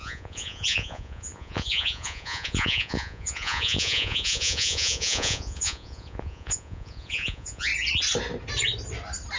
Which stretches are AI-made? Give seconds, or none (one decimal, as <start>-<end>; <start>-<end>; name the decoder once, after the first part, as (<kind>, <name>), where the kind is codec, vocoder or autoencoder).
0.0-7.7 (vocoder, Vocos)